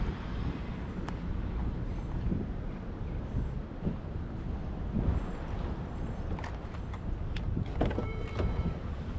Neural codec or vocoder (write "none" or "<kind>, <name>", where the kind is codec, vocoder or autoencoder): vocoder, BigVGAN v2